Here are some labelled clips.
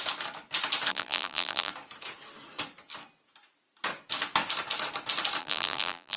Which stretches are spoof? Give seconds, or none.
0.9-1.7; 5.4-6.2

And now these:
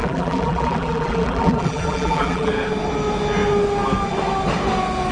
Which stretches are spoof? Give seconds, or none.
0.0-2.5

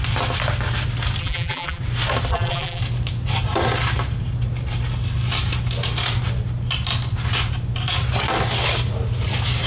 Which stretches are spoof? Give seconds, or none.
1.2-1.8; 2.3-2.8

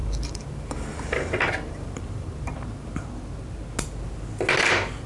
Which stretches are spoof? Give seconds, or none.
0.0-3.1

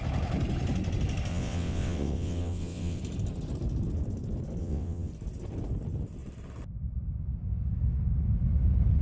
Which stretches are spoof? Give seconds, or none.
1.3-3.0; 4.6-5.1

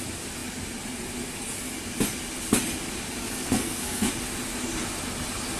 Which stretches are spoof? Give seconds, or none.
3.2-4.1

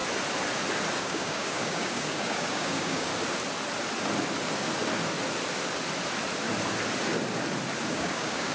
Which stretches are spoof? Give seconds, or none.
1.0-3.1; 7.9-8.5